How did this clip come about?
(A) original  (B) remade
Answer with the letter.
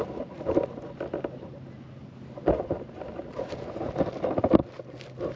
A